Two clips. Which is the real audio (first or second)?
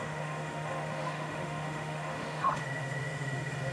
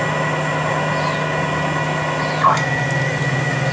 second